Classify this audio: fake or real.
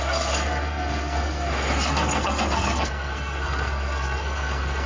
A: fake